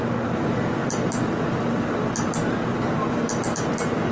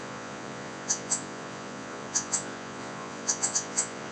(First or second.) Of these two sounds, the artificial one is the second